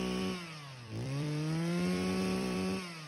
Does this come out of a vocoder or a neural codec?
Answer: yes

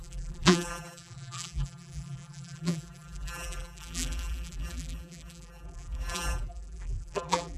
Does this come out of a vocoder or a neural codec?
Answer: yes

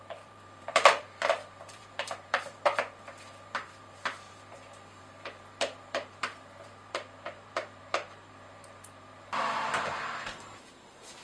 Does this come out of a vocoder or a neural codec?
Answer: yes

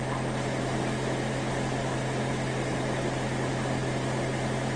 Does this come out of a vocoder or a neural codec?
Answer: no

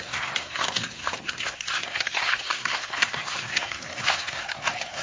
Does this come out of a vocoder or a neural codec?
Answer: yes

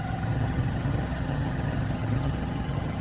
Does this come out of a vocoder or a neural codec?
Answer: yes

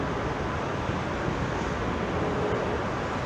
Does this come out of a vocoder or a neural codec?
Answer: no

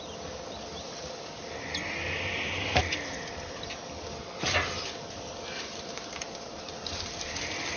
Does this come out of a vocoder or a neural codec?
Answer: no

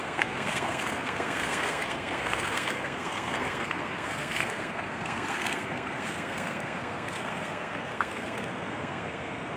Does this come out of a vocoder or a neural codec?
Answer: yes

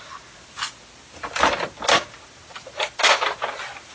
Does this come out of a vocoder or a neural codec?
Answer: no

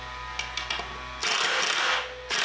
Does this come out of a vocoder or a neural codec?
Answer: no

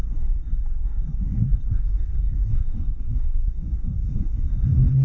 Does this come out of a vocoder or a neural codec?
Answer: yes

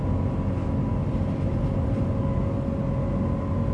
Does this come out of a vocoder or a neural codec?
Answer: no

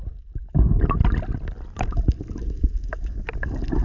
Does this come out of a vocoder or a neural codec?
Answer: no